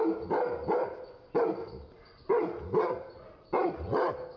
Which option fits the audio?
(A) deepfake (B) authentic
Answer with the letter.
B